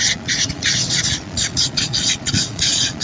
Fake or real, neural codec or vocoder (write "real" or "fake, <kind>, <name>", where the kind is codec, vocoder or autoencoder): fake, vocoder, Vocos